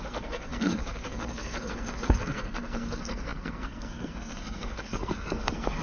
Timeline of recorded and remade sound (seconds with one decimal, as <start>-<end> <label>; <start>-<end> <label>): 0.0-5.8 remade